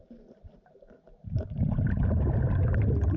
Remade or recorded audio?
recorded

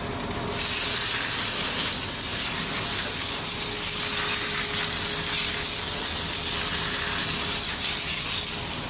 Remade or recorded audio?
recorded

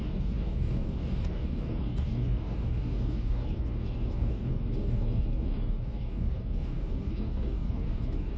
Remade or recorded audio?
remade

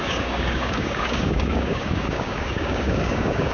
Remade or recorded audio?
remade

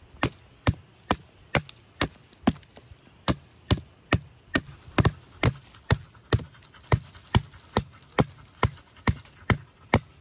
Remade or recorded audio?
recorded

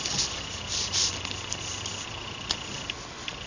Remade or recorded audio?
recorded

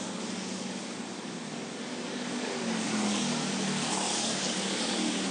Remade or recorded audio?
remade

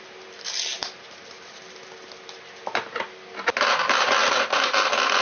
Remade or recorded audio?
recorded